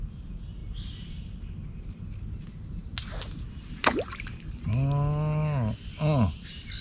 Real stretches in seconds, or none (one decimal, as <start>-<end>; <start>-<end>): 0.0-6.8